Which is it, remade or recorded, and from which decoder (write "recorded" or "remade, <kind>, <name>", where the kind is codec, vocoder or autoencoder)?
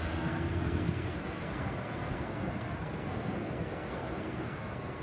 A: remade, codec, SNAC